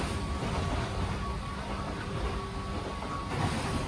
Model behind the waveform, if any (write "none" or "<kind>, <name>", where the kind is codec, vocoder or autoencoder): none